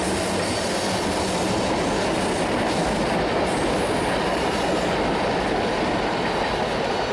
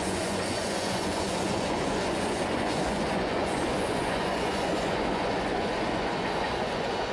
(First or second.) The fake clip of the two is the second